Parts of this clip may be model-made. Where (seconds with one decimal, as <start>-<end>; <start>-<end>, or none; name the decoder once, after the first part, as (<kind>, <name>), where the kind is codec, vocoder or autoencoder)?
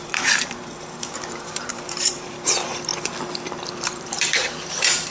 0.0-2.9 (vocoder, BigVGAN v2); 3.8-5.1